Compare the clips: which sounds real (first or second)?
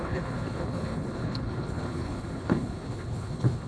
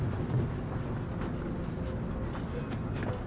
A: second